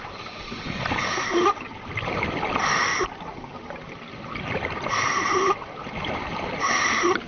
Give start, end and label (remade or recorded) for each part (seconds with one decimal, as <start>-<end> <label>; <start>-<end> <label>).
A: 0.0-2.9 remade; 2.9-4.4 recorded; 4.4-7.3 remade